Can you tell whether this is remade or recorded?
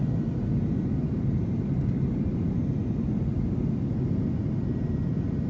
recorded